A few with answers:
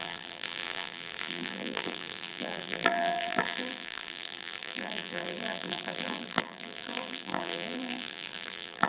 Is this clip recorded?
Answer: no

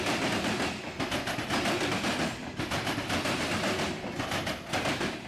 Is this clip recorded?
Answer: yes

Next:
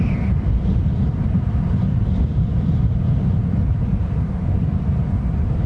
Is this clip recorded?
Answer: no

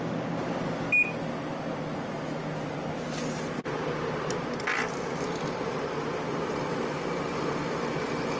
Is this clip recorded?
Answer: yes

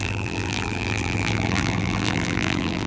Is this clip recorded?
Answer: no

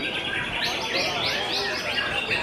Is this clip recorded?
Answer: yes